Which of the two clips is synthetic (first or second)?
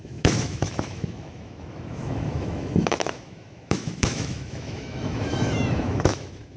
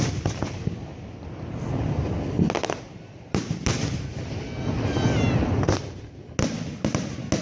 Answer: first